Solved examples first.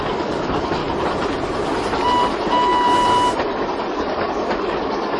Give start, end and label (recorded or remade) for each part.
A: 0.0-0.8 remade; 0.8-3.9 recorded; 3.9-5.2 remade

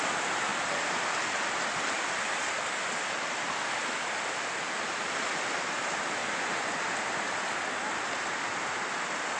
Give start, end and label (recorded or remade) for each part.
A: 0.0-6.2 recorded; 6.2-6.8 remade; 6.8-9.4 recorded

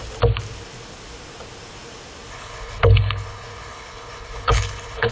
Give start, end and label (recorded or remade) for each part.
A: 0.0-2.3 recorded; 2.3-5.1 remade

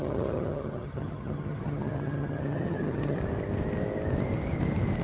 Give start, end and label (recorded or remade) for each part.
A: 0.0-3.2 remade; 3.2-5.0 recorded

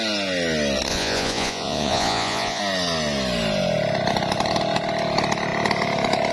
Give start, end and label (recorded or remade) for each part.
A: 0.0-0.9 recorded; 0.9-2.6 remade; 2.6-6.3 recorded